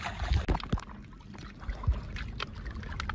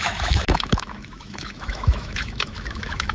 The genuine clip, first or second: first